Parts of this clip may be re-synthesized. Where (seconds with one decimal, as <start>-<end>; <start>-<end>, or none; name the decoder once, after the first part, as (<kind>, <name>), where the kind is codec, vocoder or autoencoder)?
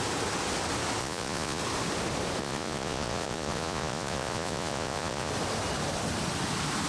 1.0-1.6 (vocoder, Vocos); 2.4-5.3